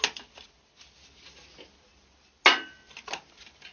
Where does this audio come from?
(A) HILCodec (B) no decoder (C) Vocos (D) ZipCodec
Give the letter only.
B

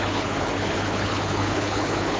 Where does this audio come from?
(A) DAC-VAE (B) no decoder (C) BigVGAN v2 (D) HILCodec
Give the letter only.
D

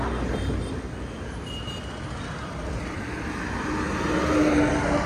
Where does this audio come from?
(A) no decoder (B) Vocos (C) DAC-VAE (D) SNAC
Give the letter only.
A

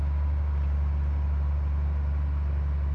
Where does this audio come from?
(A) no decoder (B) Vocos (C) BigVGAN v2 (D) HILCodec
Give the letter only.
A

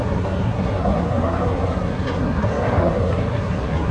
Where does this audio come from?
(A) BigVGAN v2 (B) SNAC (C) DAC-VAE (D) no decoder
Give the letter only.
B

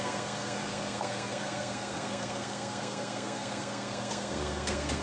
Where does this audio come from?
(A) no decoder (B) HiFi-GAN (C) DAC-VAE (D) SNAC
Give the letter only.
D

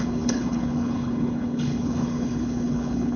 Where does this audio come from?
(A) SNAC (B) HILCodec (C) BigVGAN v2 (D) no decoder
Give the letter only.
B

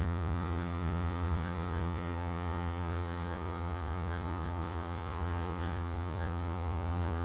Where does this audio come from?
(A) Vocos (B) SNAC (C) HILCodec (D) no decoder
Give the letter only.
A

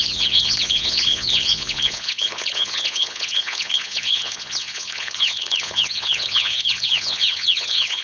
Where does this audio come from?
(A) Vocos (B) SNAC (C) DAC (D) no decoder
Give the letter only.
A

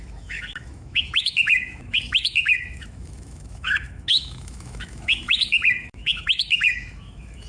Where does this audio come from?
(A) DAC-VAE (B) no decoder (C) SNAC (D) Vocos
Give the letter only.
A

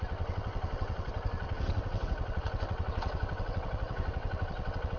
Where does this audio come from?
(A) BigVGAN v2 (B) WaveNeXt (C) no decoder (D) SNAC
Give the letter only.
B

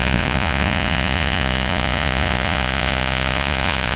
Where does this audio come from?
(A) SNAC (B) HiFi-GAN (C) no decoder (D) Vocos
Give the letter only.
D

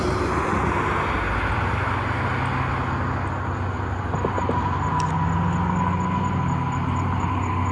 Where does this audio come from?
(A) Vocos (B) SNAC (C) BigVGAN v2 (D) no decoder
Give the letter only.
D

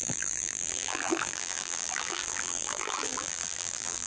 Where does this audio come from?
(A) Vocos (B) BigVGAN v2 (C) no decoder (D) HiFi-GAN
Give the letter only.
B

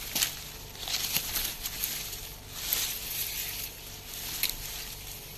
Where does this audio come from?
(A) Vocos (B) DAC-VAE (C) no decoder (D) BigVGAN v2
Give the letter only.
C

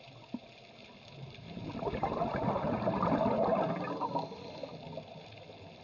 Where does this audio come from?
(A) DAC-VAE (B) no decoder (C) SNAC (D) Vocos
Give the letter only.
B